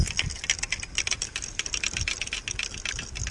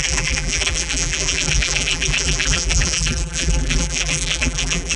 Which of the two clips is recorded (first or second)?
first